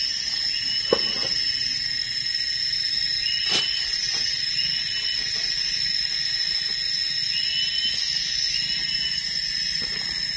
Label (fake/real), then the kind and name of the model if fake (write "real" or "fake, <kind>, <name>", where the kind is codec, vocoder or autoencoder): real